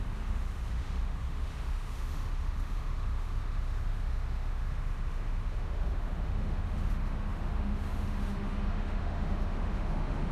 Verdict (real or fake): fake